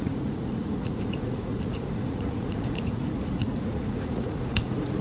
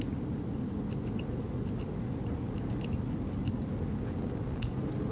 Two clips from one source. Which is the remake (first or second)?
first